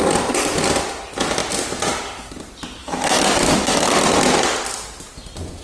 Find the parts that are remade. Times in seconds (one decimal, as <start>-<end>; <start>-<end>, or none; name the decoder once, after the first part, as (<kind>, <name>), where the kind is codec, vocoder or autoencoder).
2.8-3.9 (autoencoder, DAC-VAE)